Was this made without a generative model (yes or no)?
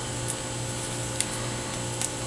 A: yes